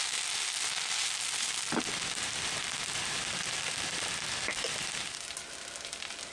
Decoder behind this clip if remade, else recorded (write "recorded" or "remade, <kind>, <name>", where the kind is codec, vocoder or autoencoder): recorded